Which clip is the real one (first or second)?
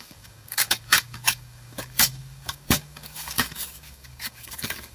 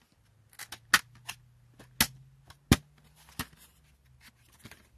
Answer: second